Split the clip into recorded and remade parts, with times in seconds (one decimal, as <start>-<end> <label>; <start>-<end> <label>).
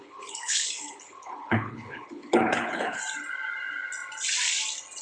0.0-3.0 remade; 3.0-5.0 recorded